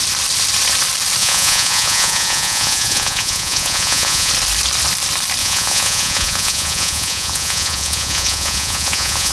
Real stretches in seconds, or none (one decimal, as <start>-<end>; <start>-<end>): 0.0-1.2; 4.3-5.4